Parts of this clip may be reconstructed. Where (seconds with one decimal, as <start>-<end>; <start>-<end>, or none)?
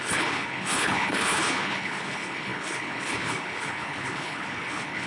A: 0.0-5.1